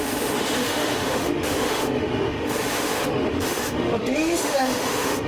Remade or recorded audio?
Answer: remade